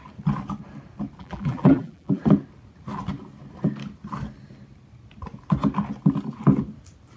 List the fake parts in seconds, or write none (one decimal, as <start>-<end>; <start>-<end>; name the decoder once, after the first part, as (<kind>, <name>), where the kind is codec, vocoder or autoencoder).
1.2-2.2 (vocoder, BigVGAN v2)